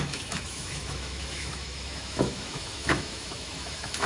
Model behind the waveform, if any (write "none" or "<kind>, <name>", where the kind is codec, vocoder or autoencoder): autoencoder, DAC-VAE